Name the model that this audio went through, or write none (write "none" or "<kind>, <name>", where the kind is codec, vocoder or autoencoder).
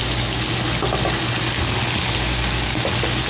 none